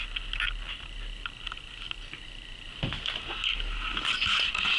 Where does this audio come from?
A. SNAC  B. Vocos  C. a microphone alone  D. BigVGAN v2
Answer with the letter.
C